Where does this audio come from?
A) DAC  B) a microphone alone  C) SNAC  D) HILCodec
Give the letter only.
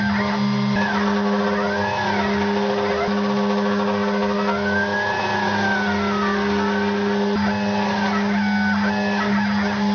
B